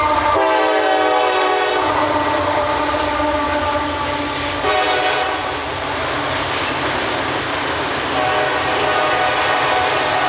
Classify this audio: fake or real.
real